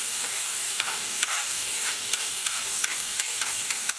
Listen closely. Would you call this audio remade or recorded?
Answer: remade